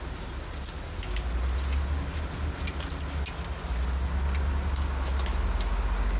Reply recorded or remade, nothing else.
recorded